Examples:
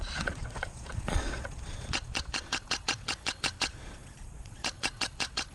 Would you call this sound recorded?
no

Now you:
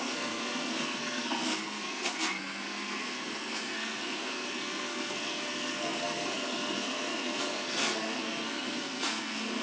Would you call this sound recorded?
no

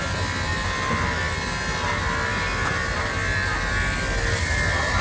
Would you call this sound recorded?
yes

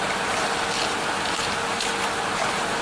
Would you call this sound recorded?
yes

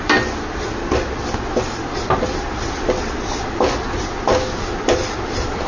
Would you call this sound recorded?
yes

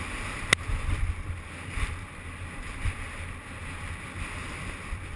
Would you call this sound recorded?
yes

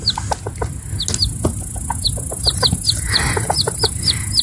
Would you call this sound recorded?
yes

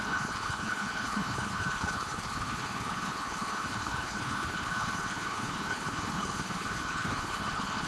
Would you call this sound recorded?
no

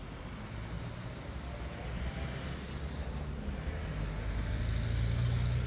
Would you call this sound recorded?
yes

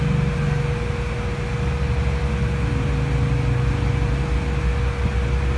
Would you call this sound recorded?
yes